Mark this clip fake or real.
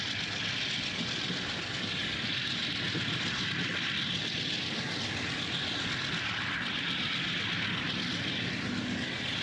real